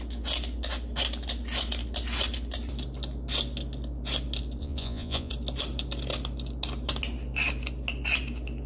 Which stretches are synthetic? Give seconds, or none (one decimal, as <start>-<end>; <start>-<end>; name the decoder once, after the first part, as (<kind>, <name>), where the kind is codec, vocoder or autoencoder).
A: 4.6-5.3 (vocoder, Vocos)